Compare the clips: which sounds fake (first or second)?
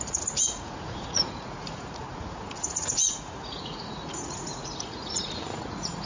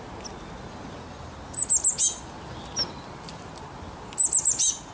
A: first